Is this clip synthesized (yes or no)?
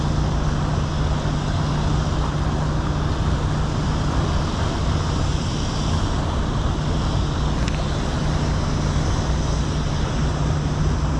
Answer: no